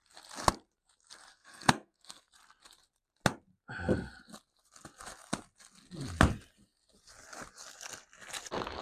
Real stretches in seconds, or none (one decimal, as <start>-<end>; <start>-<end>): 0.0-1.3; 2.3-8.8